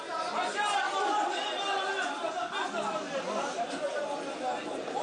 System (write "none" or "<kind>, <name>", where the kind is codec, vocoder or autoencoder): none